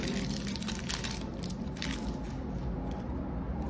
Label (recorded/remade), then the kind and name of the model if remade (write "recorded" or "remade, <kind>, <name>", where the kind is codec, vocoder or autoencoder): recorded